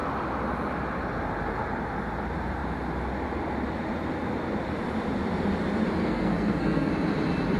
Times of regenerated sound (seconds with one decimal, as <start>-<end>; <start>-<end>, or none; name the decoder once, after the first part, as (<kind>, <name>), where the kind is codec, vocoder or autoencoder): 6.0-6.9 (codec, SNAC)